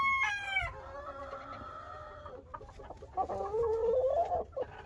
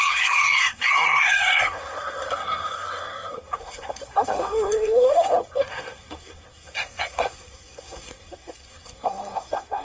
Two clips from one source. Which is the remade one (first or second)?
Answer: second